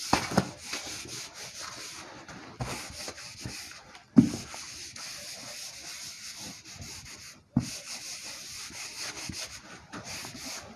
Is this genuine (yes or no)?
yes